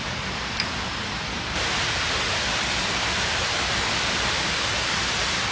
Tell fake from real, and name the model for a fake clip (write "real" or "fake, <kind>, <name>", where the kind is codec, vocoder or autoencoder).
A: fake, vocoder, BigVGAN v2